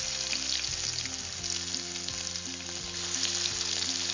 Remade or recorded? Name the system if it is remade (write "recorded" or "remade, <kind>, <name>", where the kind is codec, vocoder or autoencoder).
recorded